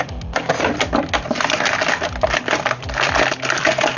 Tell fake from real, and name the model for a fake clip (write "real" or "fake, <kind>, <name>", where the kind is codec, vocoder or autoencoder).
real